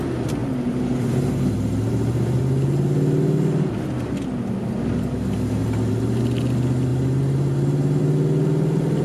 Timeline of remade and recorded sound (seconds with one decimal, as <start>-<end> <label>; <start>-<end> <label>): 0.0-0.4 recorded; 0.4-2.4 remade; 2.4-5.6 recorded; 5.6-6.2 remade; 6.2-6.9 recorded; 6.9-8.0 remade; 8.0-9.0 recorded